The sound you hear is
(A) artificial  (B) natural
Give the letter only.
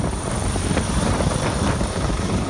A